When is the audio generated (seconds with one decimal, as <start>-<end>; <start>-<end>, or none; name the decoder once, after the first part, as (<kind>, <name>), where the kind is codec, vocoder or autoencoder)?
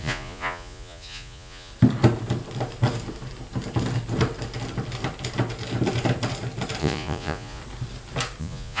0.0-1.7 (vocoder, Vocos); 6.8-7.6; 8.4-8.8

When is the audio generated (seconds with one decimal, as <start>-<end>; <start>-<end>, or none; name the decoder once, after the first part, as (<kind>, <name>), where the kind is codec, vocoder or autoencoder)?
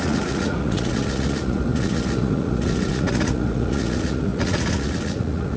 0.0-5.6 (vocoder, Vocos)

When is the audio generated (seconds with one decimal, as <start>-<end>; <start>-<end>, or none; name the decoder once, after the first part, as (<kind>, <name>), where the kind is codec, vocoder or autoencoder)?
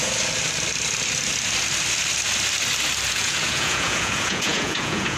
3.1-5.2 (vocoder, Vocos)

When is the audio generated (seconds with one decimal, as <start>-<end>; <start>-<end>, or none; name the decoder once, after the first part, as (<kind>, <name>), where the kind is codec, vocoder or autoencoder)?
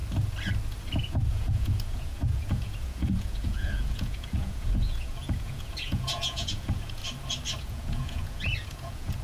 1.0-7.0 (vocoder, Vocos); 7.6-9.2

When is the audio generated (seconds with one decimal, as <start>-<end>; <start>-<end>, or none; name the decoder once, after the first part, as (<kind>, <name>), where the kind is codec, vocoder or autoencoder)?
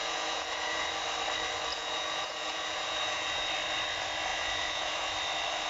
0.0-0.9 (vocoder, Vocos); 1.7-3.5; 4.3-5.1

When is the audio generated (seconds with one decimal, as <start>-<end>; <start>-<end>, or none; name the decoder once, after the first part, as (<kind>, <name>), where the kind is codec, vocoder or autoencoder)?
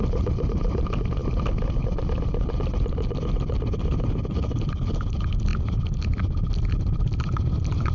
none